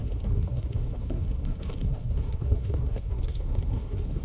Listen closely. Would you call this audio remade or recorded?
remade